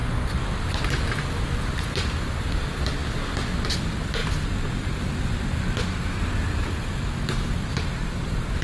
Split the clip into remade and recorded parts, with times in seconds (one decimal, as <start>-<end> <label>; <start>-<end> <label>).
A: 0.0-0.7 recorded; 0.7-3.0 remade; 3.0-3.7 recorded; 3.7-4.2 remade; 4.2-4.7 recorded; 4.7-8.6 remade